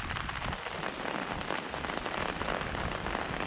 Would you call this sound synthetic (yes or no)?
yes